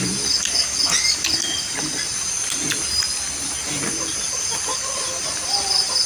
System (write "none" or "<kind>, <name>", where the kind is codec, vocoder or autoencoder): none